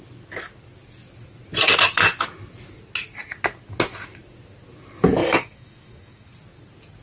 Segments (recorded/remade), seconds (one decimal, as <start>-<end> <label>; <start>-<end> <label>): 0.0-5.2 recorded; 5.2-6.3 remade; 6.3-7.0 recorded